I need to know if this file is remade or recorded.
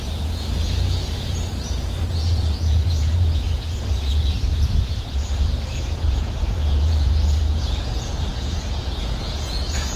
remade